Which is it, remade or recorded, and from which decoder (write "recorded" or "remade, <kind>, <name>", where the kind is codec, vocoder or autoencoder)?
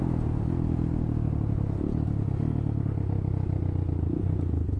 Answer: recorded